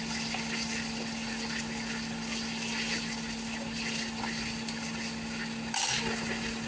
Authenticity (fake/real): real